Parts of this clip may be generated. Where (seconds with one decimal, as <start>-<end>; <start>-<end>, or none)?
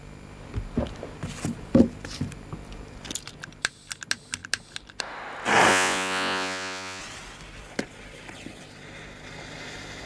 5.7-7.0